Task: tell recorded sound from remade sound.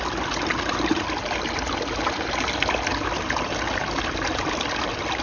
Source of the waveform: recorded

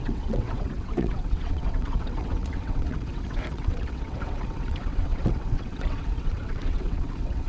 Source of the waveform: remade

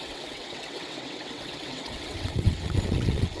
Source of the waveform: remade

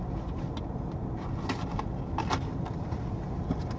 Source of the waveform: recorded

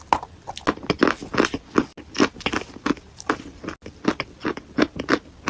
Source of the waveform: recorded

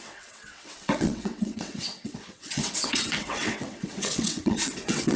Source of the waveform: remade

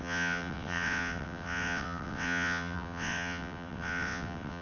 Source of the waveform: remade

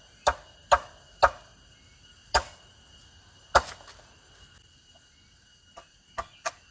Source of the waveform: recorded